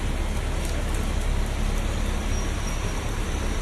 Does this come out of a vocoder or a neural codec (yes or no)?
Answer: no